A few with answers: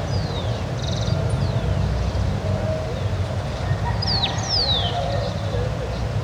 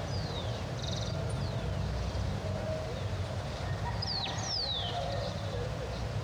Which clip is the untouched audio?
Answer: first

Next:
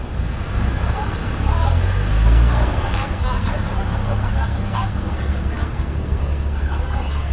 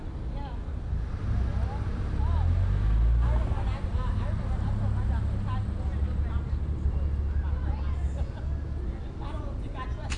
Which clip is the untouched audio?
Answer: second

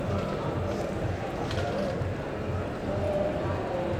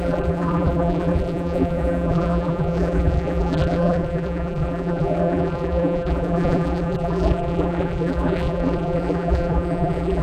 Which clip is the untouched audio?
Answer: first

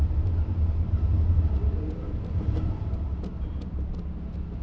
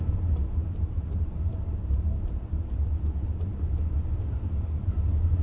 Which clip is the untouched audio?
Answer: first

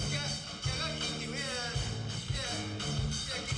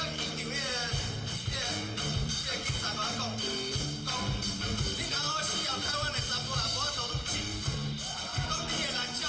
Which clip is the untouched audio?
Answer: first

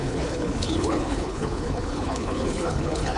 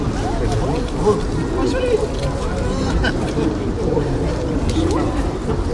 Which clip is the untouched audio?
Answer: second